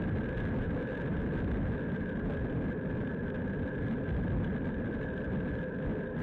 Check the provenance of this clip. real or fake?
real